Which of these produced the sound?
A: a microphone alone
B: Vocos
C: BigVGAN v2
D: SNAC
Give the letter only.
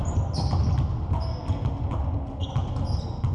A